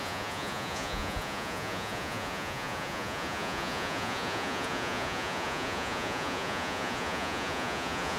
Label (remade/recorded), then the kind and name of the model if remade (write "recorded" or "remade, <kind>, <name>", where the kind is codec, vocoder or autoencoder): remade, vocoder, Vocos